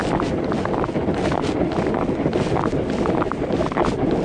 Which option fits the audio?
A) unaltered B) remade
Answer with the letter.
A